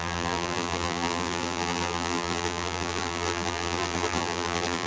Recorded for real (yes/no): no